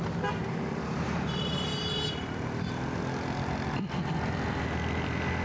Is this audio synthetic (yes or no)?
no